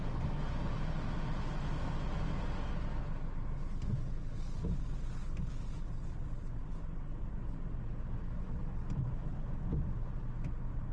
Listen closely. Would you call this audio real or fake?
real